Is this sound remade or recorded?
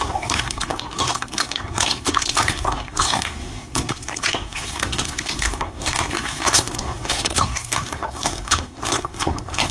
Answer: remade